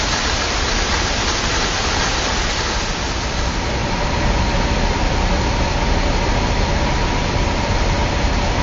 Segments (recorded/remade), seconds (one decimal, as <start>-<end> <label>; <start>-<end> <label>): 0.0-8.6 recorded